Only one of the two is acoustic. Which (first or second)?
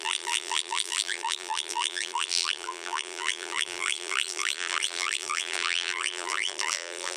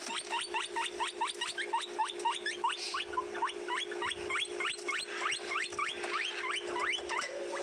second